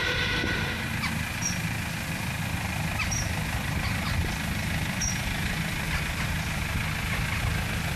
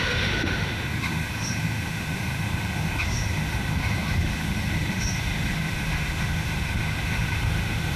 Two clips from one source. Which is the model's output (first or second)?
second